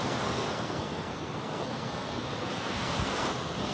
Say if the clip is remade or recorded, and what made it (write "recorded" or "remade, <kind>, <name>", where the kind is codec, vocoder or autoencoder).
remade, codec, SNAC